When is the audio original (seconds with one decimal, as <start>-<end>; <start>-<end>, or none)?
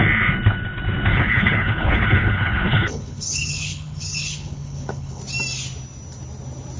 0.0-1.1; 5.2-6.8